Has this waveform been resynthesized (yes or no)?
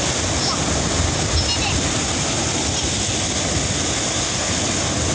no